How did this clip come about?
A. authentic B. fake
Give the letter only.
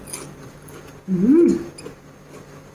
A